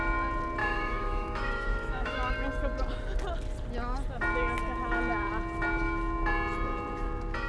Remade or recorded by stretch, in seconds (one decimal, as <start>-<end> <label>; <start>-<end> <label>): 0.0-0.6 recorded; 0.6-2.3 remade; 2.3-7.5 recorded